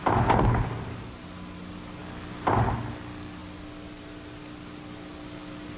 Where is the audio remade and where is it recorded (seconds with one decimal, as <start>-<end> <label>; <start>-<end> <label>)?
0.0-5.8 recorded